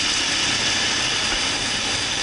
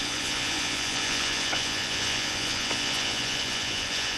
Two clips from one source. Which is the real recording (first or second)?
first